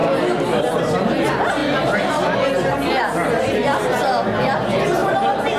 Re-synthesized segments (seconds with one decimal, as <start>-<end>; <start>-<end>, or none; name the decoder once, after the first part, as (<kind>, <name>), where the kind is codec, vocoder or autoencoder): none